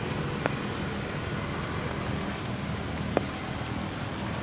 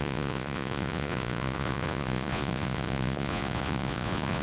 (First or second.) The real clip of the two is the first